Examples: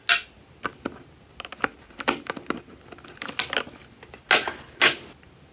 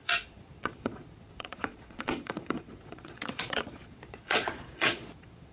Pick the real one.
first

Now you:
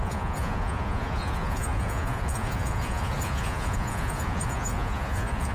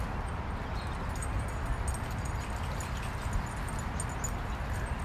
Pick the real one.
second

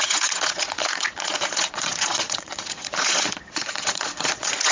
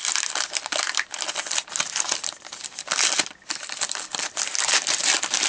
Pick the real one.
second